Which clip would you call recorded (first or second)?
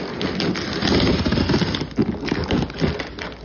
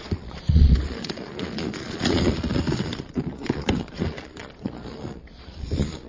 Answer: first